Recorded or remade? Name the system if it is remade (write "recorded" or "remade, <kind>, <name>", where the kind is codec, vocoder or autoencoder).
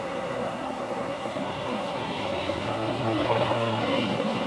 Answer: remade, codec, SNAC